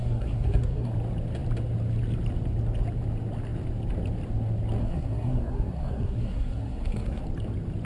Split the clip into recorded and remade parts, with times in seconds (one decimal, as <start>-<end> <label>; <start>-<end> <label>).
0.0-0.9 remade; 0.9-4.8 recorded; 4.8-7.2 remade; 7.2-7.9 recorded